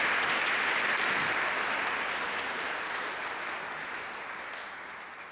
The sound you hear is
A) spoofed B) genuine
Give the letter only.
B